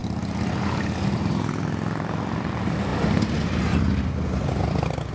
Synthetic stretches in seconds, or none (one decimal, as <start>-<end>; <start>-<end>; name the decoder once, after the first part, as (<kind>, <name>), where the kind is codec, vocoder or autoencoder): none